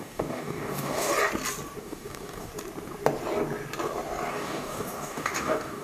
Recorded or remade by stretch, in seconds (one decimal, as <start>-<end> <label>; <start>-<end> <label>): 0.0-1.1 remade; 1.1-1.8 recorded; 1.8-2.5 remade; 2.5-4.3 recorded; 4.3-5.8 remade